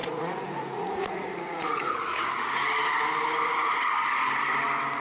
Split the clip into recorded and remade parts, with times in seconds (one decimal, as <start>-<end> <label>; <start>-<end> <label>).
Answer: 0.0-2.3 remade; 2.3-5.0 recorded